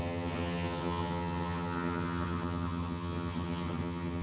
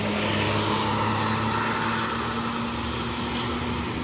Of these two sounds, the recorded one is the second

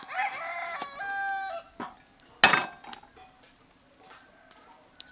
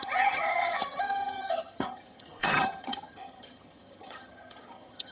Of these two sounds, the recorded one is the first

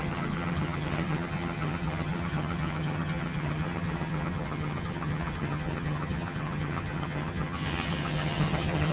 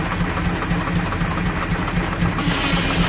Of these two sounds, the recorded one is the second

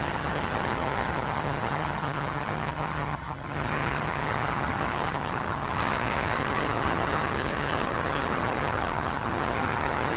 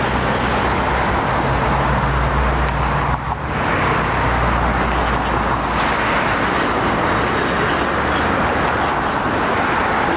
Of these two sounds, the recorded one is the second